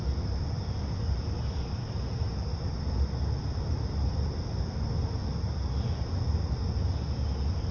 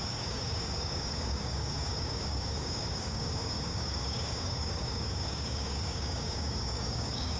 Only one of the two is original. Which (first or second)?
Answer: first